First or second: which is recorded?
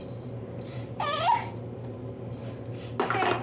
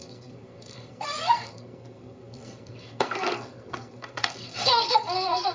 first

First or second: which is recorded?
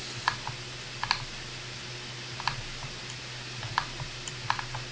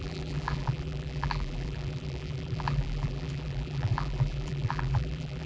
first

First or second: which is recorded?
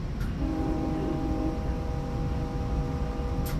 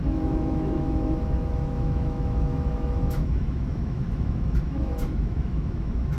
first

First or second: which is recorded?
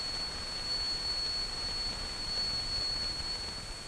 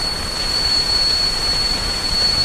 first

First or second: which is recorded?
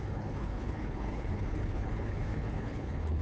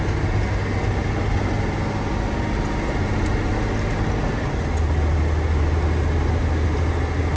second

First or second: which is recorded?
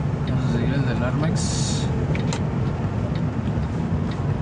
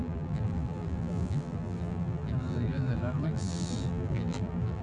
first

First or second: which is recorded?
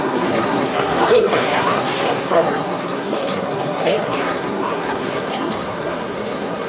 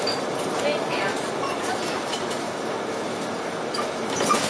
second